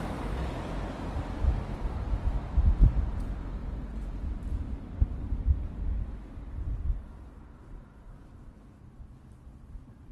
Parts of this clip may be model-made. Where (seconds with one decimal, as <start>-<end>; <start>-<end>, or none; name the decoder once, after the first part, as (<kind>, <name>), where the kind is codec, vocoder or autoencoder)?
3.6-4.3 (vocoder, Vocos)